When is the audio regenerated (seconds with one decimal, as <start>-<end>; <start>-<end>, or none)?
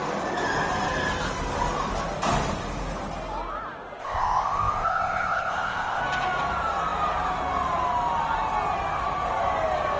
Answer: 4.0-6.0